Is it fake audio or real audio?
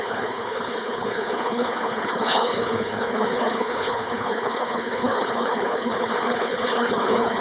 fake